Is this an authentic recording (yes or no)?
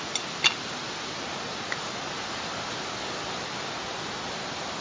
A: yes